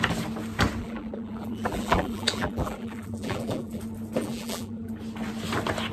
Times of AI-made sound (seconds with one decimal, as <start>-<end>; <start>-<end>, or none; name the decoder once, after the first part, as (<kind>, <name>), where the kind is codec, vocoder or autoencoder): 0.8-3.8 (vocoder, BigVGAN v2); 4.2-4.9